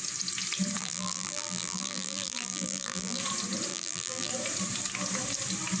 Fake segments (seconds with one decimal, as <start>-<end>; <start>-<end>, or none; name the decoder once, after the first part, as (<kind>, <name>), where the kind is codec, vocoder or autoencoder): 0.8-3.2 (vocoder, BigVGAN v2); 3.7-4.3